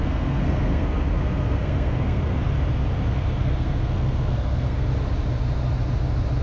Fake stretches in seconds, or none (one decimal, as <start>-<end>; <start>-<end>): 0.0-2.5; 3.1-4.9